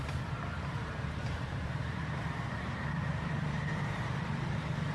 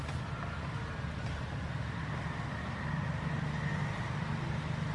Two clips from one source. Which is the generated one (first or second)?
first